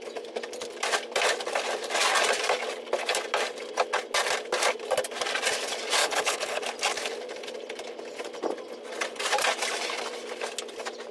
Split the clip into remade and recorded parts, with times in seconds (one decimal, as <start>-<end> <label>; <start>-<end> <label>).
0.0-6.0 recorded; 6.0-6.6 remade; 6.6-11.1 recorded